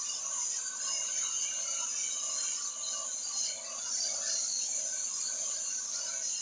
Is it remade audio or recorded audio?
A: recorded